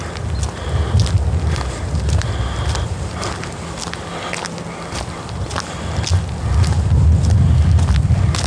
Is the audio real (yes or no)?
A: yes